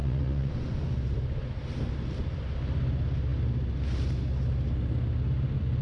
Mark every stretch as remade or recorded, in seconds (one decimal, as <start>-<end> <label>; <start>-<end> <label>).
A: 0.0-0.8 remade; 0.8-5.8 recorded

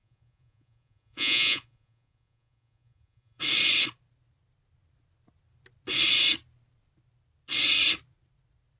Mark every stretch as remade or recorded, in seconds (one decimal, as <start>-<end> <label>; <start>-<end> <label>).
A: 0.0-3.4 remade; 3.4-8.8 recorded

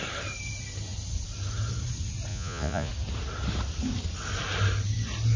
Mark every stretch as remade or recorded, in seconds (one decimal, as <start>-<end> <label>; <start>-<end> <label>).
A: 0.0-2.3 recorded; 2.3-2.9 remade; 2.9-5.4 recorded